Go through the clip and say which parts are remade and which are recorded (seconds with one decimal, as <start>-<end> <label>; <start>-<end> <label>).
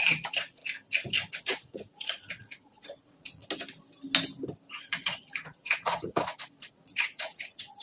0.0-0.6 remade; 0.6-1.3 recorded; 1.3-3.4 remade; 3.4-4.8 recorded; 4.8-7.8 remade